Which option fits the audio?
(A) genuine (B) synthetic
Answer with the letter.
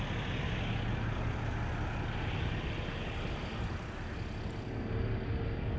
A